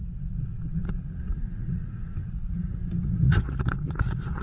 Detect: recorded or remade remade